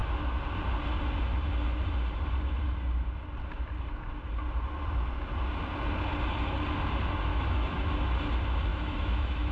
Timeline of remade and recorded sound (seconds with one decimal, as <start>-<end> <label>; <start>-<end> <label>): 0.0-7.3 recorded; 7.3-7.9 remade; 7.9-8.7 recorded; 8.7-9.5 remade